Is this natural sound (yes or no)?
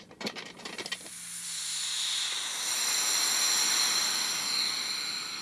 yes